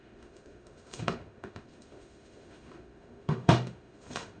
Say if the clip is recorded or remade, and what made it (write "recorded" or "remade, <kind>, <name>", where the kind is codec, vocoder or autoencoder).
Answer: remade, autoencoder, DAC-VAE